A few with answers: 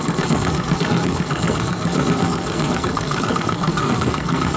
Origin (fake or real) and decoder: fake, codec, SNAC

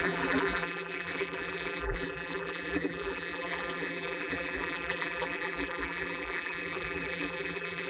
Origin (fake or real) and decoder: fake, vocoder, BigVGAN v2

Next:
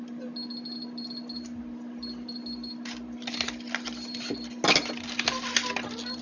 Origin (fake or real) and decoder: real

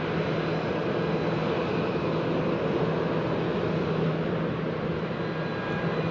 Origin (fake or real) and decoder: real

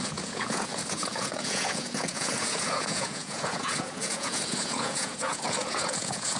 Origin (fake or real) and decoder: fake, vocoder, Vocos